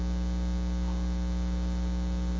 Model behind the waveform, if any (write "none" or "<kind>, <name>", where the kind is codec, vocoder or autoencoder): none